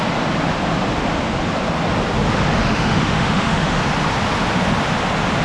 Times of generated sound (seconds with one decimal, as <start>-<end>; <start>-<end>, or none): 2.6-3.8

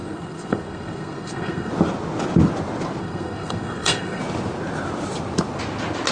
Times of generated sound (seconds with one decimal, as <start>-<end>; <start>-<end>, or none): 0.0-1.7; 3.0-4.2